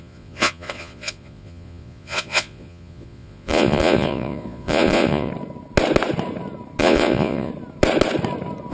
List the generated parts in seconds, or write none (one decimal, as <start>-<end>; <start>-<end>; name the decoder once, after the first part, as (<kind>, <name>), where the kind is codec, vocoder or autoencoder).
0.0-5.3 (vocoder, Vocos); 6.8-7.5